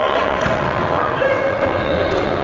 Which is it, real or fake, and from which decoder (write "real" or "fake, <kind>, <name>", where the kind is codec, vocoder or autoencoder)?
fake, vocoder, WaveNeXt